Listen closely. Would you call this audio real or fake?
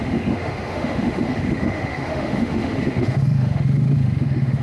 fake